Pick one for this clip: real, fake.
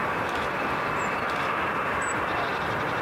fake